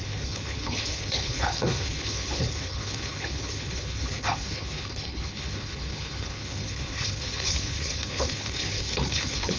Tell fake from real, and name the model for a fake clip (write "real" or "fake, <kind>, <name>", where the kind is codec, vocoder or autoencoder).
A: fake, codec, HILCodec